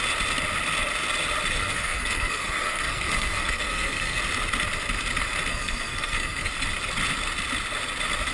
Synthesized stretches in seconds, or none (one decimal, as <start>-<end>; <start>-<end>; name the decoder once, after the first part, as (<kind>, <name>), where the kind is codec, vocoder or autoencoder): 1.6-4.2 (codec, SNAC); 5.5-6.5